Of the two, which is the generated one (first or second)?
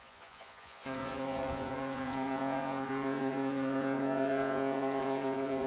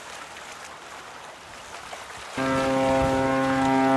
first